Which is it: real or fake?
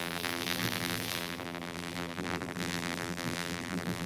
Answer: fake